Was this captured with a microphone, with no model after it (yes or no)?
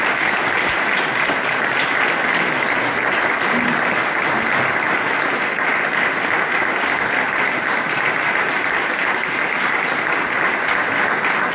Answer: yes